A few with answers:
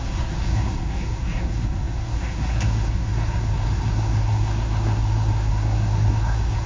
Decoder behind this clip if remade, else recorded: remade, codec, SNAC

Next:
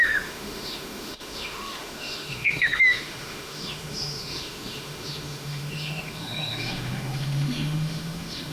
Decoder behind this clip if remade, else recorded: remade, autoencoder, DAC-VAE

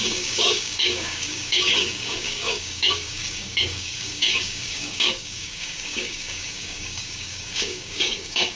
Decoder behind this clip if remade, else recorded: remade, codec, DAC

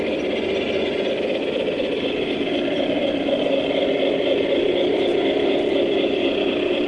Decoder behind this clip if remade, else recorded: recorded